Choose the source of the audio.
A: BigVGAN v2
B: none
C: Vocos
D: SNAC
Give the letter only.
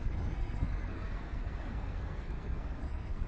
D